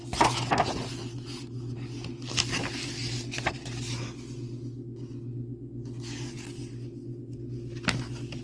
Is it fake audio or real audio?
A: real